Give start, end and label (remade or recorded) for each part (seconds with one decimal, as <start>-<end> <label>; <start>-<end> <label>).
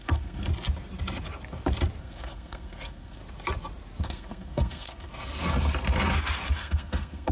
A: 0.0-0.5 remade; 0.5-2.0 recorded; 2.0-3.2 remade; 3.2-4.0 recorded; 4.0-5.1 remade; 5.1-6.6 recorded; 6.6-7.3 remade